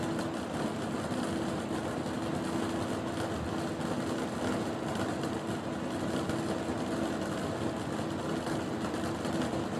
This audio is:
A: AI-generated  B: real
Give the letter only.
B